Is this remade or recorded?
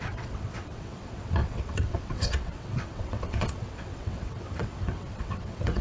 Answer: remade